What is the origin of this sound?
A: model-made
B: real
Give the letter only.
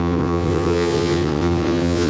A